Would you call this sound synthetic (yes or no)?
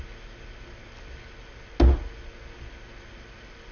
no